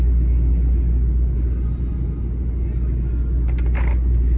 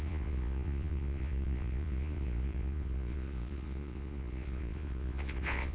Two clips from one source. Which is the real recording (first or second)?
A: first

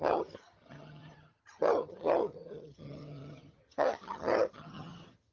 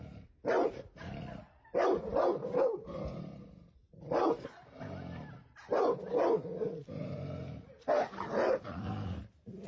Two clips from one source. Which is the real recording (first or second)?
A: second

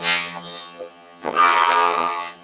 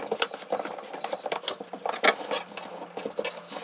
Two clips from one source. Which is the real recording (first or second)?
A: second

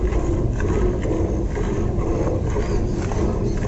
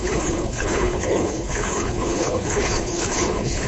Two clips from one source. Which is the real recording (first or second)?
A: first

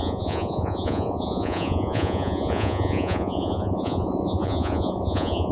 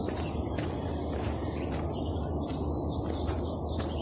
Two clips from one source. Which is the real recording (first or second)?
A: second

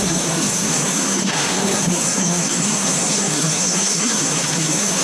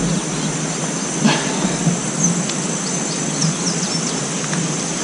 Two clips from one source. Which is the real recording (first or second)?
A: second